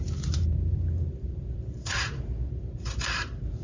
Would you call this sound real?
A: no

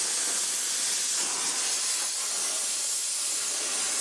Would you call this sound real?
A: yes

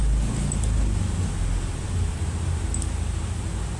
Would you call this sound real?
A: yes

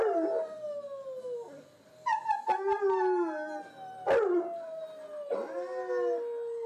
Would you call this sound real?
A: yes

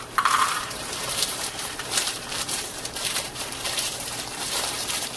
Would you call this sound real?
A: no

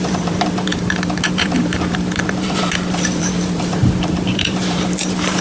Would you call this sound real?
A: no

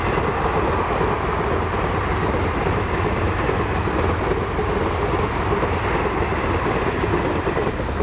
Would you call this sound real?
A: yes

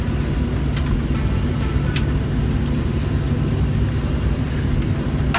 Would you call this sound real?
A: yes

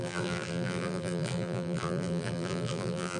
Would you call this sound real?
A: no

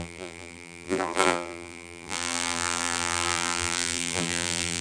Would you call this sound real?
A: no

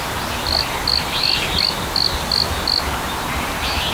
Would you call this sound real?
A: yes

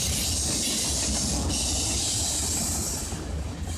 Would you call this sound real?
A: yes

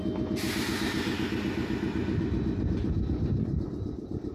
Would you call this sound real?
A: yes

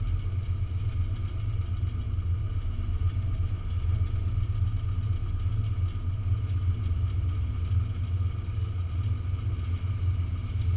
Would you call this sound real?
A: yes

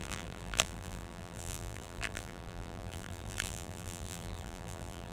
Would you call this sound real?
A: no